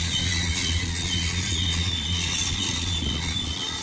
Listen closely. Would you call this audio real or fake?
fake